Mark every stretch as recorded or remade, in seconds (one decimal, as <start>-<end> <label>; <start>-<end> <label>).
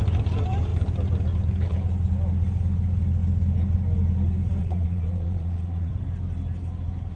0.0-4.6 recorded; 4.6-5.9 remade; 5.9-7.2 recorded